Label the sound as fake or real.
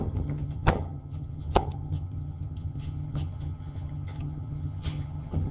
fake